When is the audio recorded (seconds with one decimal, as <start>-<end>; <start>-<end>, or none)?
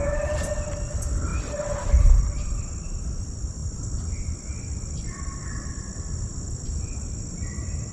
0.0-7.9